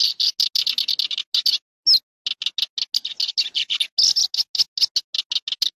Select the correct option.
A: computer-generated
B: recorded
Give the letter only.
B